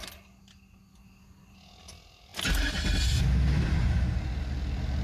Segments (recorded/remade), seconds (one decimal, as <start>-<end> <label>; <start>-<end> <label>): 0.0-5.0 recorded